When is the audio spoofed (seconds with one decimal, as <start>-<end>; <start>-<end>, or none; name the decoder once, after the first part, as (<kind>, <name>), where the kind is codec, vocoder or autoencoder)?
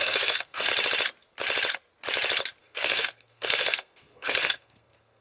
0.0-0.7 (codec, SNAC); 2.6-5.2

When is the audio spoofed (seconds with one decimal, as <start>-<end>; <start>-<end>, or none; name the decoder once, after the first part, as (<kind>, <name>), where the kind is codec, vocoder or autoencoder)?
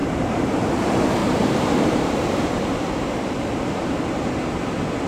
0.0-0.7 (vocoder, BigVGAN v2); 1.2-4.3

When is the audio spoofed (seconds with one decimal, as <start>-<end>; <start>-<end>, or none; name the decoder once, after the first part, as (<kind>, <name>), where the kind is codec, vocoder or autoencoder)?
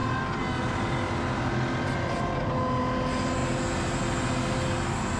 none